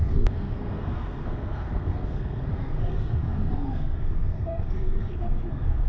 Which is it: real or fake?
fake